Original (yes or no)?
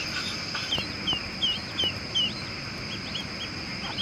yes